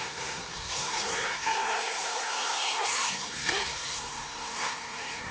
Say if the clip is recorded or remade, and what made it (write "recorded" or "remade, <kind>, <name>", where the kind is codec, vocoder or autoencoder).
remade, codec, SNAC